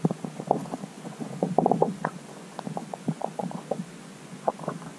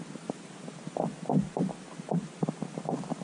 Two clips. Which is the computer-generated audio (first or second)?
first